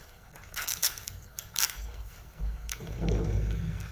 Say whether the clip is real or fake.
fake